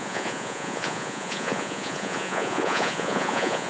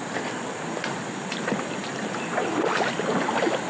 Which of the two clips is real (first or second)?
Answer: second